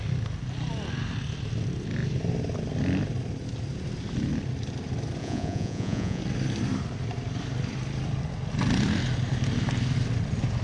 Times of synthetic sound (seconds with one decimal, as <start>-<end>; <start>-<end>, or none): 5.2-6.2